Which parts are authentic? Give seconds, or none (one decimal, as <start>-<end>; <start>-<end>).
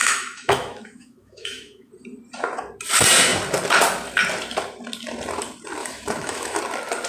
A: 1.9-5.8; 6.6-7.1